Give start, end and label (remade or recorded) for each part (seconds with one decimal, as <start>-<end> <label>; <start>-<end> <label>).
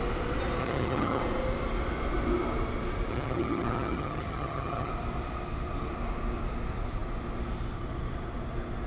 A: 0.0-0.6 recorded; 0.6-1.2 remade; 1.2-3.1 recorded; 3.1-4.9 remade; 4.9-8.9 recorded